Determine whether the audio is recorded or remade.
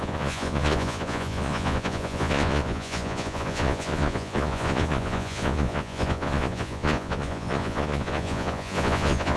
remade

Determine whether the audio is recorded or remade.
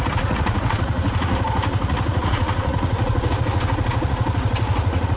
remade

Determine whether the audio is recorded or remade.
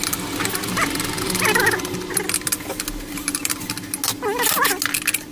recorded